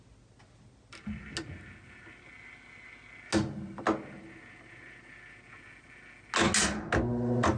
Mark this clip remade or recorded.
recorded